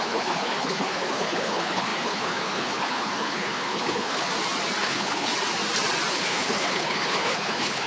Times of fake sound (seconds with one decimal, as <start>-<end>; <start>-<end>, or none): 0.0-4.3; 4.8-5.3; 6.1-7.9